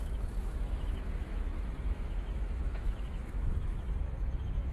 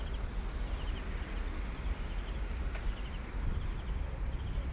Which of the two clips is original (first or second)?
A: second